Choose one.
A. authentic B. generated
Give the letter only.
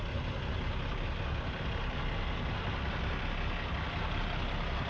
A